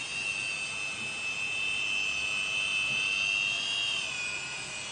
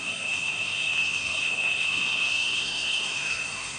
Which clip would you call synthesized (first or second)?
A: second